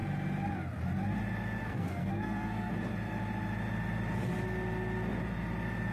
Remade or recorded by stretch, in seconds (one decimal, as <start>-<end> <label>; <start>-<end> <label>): 0.0-1.6 recorded; 1.6-2.7 remade; 2.7-5.9 recorded